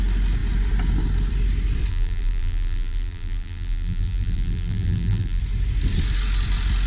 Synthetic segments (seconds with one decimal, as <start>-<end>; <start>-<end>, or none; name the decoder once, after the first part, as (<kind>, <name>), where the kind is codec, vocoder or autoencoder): 1.9-5.4 (vocoder, BigVGAN v2)